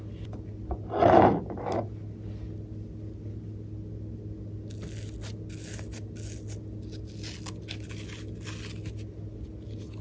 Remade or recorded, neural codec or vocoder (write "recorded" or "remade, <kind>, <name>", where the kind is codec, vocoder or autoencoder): recorded